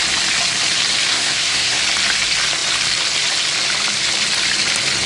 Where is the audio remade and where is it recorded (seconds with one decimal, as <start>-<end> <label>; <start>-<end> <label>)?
0.0-1.1 recorded; 1.1-1.8 remade; 1.8-5.1 recorded